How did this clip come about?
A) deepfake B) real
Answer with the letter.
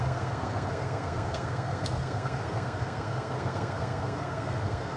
A